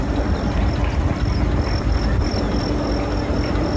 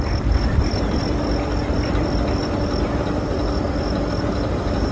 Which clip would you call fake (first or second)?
second